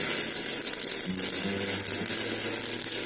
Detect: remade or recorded recorded